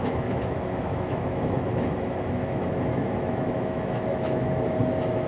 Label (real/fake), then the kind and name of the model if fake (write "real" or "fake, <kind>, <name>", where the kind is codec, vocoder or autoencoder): fake, autoencoder, DAC-VAE